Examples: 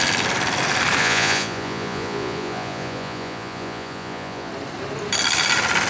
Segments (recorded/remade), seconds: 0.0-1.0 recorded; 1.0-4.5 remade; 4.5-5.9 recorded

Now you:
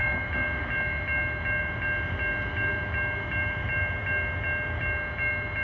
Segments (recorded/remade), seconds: 0.0-5.6 recorded

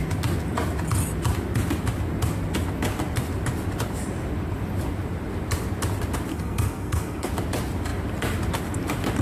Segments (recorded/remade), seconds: 0.0-6.3 recorded; 6.3-7.3 remade; 7.3-9.2 recorded

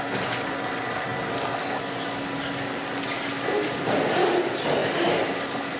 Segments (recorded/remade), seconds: 0.0-5.8 recorded

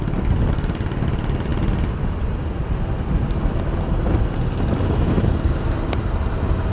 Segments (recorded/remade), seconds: 0.0-6.7 recorded

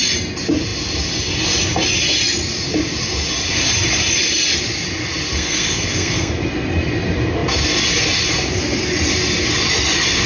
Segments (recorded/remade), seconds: 0.0-5.3 recorded; 5.3-6.3 remade; 6.3-10.3 recorded